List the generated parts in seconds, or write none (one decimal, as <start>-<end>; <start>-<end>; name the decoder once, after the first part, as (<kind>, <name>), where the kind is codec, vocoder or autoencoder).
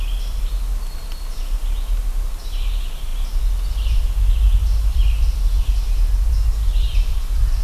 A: 4.6-5.7 (vocoder, BigVGAN v2)